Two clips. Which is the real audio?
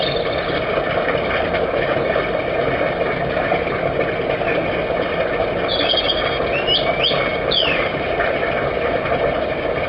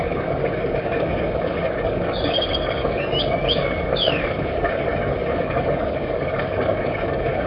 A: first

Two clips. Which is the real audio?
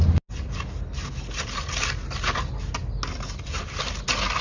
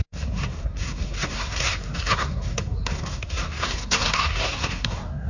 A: first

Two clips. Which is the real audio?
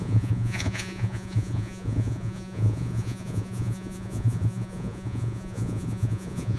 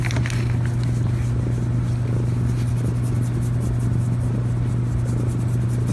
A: second